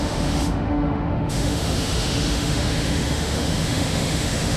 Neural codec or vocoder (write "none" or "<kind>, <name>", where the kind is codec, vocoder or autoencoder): autoencoder, DAC-VAE